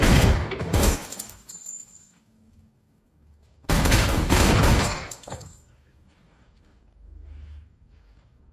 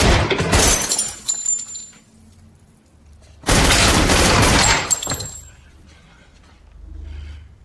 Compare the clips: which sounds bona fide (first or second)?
second